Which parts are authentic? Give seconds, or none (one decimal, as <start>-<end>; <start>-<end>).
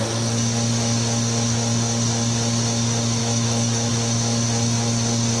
0.0-3.2; 3.9-5.4